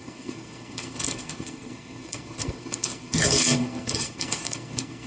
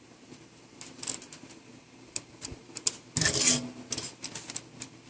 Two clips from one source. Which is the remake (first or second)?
first